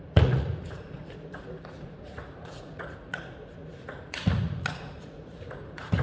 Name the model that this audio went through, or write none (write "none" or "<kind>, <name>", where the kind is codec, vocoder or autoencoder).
vocoder, Vocos